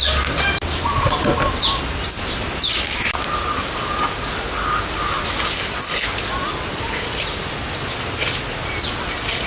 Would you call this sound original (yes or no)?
yes